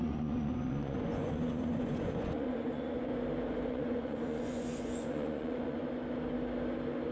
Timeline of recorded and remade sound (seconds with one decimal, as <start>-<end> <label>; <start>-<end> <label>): 0.0-3.1 remade; 3.1-3.7 recorded; 3.7-5.8 remade; 5.8-7.1 recorded